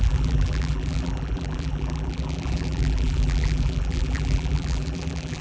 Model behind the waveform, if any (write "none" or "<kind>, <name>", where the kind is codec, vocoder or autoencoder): vocoder, BigVGAN v2